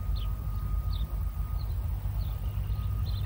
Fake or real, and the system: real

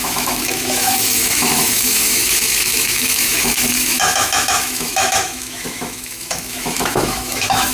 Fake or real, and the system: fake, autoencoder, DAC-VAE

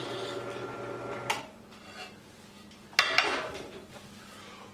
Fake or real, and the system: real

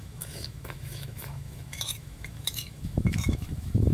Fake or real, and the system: fake, autoencoder, DAC-VAE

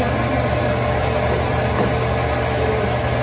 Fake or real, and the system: real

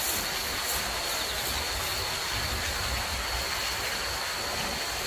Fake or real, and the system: real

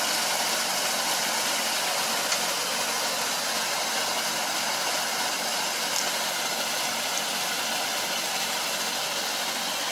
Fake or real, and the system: real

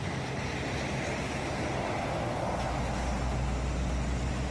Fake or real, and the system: real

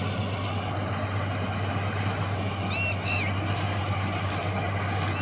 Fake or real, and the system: real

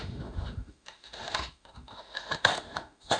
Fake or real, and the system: fake, autoencoder, DAC-VAE